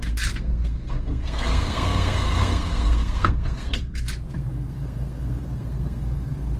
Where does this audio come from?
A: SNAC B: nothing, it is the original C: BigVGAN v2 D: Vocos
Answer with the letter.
A